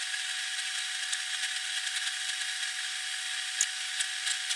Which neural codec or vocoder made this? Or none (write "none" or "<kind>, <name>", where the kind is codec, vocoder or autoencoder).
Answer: none